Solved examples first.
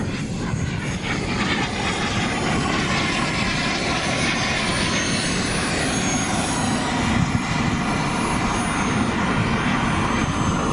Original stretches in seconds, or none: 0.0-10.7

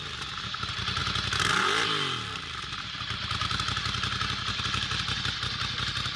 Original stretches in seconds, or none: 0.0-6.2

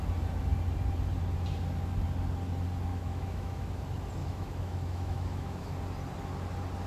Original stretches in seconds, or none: 0.0-2.9; 3.8-4.2; 5.7-6.9

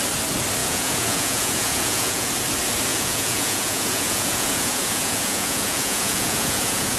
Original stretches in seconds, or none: 0.0-0.6; 2.3-2.9

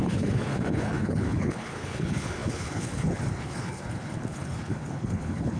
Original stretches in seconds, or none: none

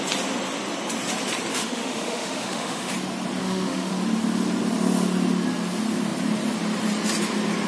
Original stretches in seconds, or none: 0.0-1.5; 2.9-3.4; 3.9-7.7

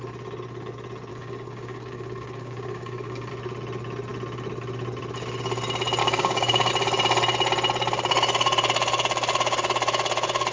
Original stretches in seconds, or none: 0.0-1.1; 3.3-6.0; 6.7-10.5

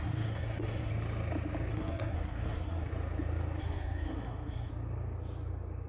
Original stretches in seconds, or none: 0.9-1.7; 2.9-3.6; 4.7-5.9